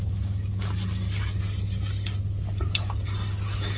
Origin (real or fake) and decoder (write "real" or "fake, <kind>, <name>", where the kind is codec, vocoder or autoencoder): real